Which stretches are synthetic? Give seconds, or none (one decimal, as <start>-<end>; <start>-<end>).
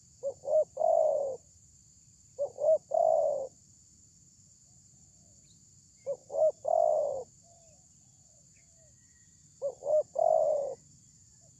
0.8-3.0